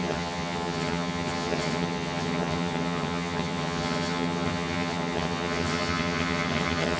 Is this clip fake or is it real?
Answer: fake